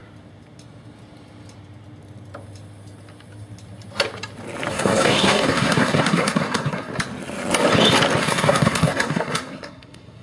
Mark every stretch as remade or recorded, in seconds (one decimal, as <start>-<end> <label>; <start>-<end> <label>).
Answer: 0.0-4.7 recorded; 4.7-6.9 remade; 6.9-8.2 recorded; 8.2-10.2 remade